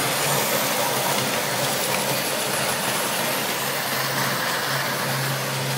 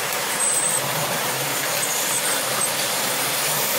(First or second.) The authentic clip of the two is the first